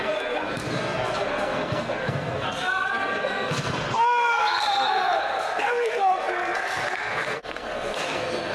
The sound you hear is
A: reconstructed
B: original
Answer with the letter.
A